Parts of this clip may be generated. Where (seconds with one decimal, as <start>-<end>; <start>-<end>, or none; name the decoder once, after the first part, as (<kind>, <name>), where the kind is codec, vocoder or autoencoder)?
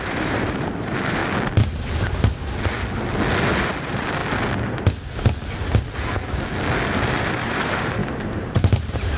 0.0-1.2 (vocoder, BigVGAN v2); 3.8-4.2; 7.3-9.2